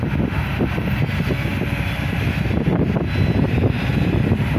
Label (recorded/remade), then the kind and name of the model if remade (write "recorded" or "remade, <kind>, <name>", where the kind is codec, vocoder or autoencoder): recorded